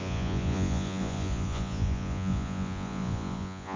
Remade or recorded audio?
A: remade